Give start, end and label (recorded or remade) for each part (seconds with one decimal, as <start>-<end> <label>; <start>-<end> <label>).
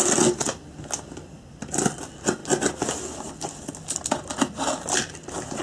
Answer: 0.0-5.6 recorded